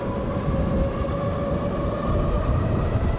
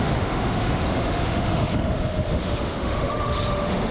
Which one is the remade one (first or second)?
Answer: second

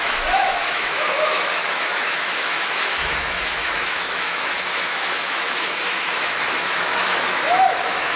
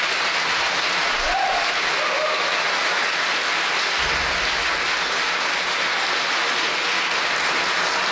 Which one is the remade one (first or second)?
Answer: first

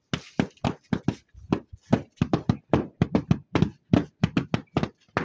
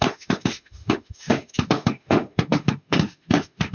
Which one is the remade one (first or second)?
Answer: second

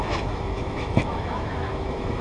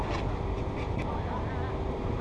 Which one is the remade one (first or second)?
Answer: first